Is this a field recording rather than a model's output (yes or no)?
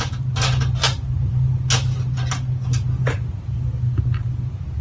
yes